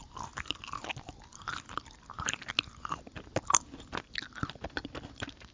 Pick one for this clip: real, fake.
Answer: real